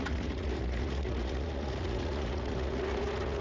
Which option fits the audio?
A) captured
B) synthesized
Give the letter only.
B